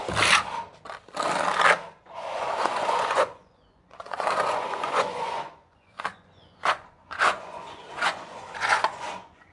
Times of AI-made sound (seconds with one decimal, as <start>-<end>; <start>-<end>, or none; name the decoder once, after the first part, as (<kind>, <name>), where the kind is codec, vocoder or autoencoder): 2.0-9.5 (vocoder, Vocos)